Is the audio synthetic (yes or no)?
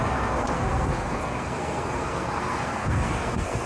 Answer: yes